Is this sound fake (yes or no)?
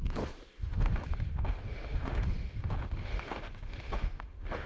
yes